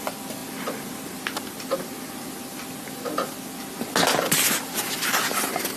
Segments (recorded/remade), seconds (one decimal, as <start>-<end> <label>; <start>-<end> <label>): 0.0-5.8 recorded